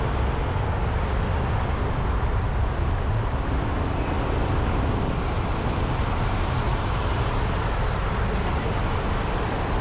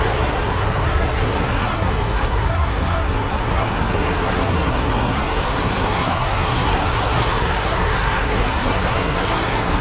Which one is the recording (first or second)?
first